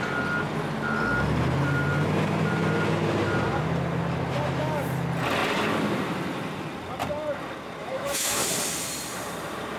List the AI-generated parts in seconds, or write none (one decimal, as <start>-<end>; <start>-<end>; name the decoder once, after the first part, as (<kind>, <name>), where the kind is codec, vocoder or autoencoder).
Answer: 7.8-8.4 (autoencoder, DAC-VAE)